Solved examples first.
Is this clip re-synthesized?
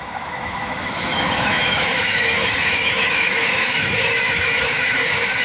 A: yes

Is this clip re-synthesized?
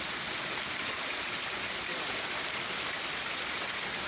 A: no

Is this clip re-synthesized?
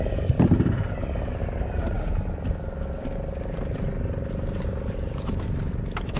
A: no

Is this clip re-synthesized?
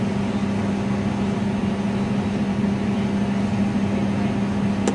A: no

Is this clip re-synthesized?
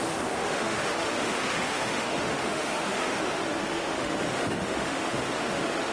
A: yes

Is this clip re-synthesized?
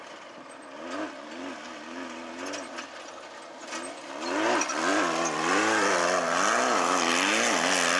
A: no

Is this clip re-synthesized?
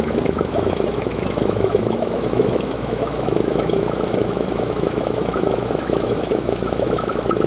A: yes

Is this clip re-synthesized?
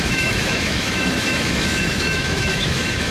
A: yes